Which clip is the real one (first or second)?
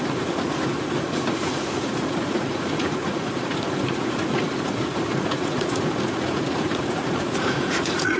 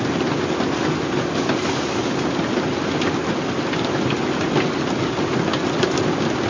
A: second